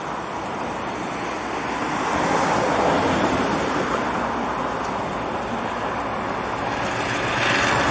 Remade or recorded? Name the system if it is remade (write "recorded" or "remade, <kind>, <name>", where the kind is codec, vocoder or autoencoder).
recorded